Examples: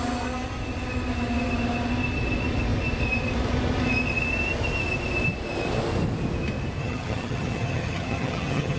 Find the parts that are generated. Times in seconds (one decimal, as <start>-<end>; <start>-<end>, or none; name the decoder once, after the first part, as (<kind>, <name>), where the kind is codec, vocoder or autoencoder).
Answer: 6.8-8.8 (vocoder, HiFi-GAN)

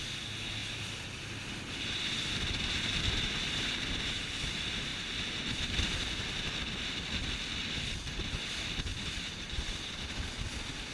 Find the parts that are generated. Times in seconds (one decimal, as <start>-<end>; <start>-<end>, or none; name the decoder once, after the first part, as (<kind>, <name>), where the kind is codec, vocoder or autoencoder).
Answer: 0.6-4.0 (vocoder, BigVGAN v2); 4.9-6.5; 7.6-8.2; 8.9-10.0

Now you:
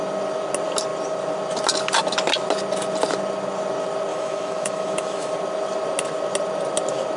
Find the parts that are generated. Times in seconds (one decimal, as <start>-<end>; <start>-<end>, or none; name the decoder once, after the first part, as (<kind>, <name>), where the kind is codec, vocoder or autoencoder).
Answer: 4.1-5.3 (autoencoder, DAC-VAE)